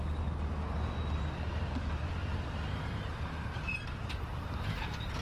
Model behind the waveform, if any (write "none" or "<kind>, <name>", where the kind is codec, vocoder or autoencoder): none